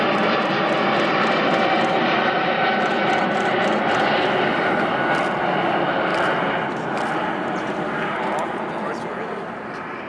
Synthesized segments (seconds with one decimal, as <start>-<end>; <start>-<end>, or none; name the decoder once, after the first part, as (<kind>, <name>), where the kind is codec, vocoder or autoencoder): none

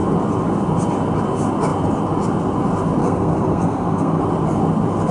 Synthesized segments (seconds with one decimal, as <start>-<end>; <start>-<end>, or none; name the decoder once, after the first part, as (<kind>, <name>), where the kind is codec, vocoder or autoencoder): 3.0-4.2 (codec, SNAC)

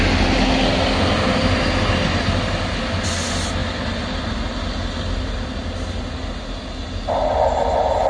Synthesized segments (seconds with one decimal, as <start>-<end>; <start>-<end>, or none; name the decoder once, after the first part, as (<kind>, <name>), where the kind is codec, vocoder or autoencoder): none

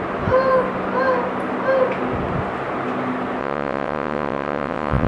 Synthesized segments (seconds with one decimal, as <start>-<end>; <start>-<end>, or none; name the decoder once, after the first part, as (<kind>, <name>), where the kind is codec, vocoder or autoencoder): 3.4-5.1 (vocoder, WaveNeXt)